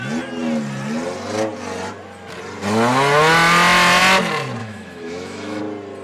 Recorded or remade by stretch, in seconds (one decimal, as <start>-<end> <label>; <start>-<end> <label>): 0.0-4.6 recorded; 4.6-5.6 remade; 5.6-6.0 recorded